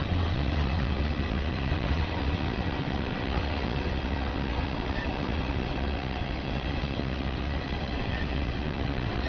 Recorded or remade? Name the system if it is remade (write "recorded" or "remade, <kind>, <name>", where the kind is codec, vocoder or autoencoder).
remade, vocoder, WaveNeXt